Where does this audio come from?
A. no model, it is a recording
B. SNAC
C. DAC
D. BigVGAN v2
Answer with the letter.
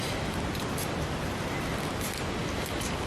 A